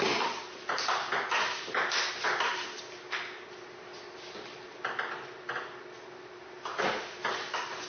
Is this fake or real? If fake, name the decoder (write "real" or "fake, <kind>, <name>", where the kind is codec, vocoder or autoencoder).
real